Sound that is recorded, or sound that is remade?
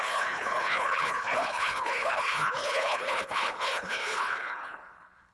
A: remade